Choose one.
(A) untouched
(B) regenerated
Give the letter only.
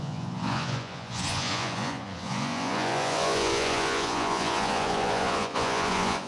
B